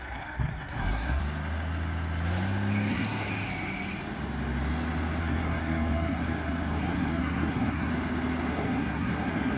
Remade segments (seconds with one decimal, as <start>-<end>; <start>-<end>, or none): 0.0-1.2; 2.9-3.3; 5.2-7.9; 8.5-9.6